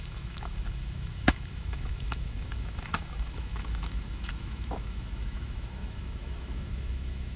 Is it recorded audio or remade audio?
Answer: remade